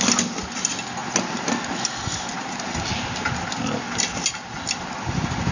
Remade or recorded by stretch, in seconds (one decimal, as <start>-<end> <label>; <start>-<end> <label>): 0.0-5.5 recorded